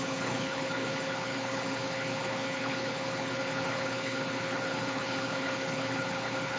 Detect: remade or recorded remade